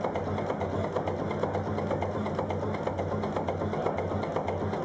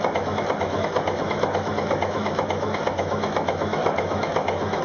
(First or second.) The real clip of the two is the first